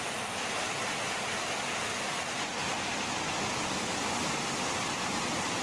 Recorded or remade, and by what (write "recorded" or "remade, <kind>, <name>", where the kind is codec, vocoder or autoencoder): recorded